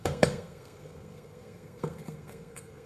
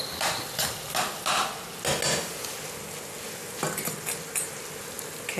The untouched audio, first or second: second